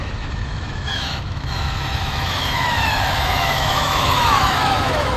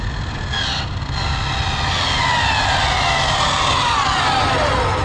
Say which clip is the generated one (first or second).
first